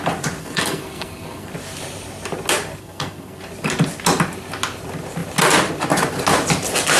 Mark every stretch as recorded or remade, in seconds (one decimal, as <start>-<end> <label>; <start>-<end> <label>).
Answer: 0.0-0.4 recorded; 0.4-1.5 remade; 1.5-2.8 recorded; 2.8-3.4 remade; 3.4-7.0 recorded